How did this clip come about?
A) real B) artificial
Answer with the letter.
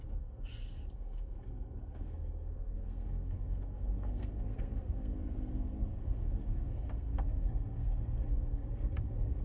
B